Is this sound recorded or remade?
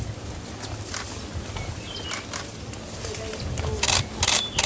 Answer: recorded